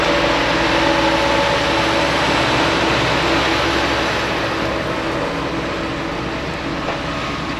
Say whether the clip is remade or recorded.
recorded